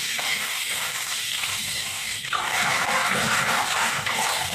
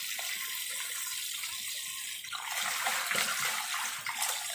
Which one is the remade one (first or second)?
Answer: first